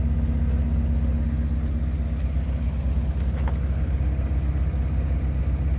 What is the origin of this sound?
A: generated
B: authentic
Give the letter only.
B